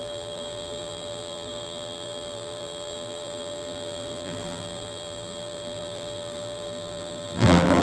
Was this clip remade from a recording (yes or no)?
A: yes